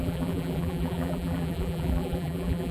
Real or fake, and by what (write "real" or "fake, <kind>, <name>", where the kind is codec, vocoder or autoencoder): fake, vocoder, BigVGAN v2